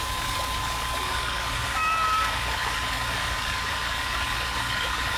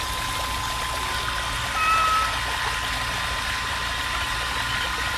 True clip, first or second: second